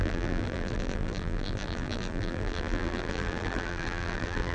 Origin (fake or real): fake